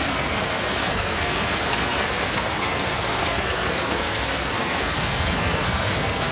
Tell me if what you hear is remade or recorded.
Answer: remade